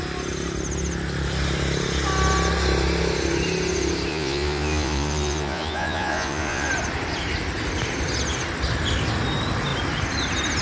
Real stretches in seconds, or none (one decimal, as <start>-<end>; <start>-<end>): 0.0-4.1; 6.7-10.6

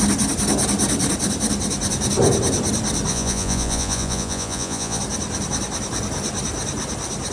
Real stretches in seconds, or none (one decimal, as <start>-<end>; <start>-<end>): 0.0-3.1; 5.0-7.3

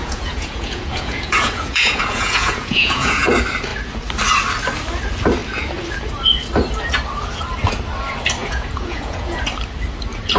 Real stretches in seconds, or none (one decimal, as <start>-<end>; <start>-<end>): 3.3-8.4; 9.4-10.4

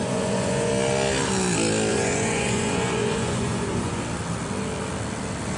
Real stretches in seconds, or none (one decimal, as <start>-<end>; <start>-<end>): 0.7-1.9; 4.0-5.6

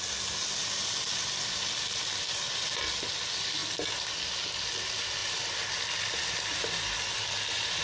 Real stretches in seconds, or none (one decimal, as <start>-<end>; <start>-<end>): 0.0-7.8

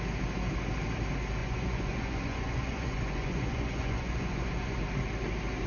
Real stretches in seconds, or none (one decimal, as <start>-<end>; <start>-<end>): 0.0-1.4; 4.8-5.7

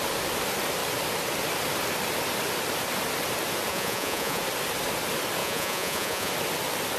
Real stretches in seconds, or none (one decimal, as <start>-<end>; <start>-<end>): 0.0-3.7; 4.4-5.4; 6.3-7.0

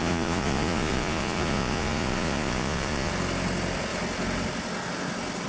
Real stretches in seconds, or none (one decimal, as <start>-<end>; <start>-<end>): 3.1-5.5